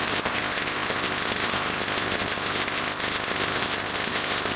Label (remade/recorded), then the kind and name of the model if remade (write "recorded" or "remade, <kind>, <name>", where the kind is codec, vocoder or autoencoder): remade, codec, ZipCodec